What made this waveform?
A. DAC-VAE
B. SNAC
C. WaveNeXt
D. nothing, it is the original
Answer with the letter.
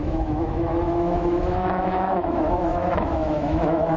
A